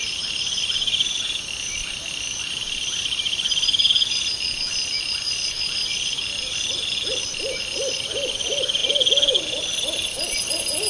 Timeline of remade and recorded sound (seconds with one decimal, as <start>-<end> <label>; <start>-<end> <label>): 0.0-8.8 remade; 8.8-9.6 recorded; 9.6-10.9 remade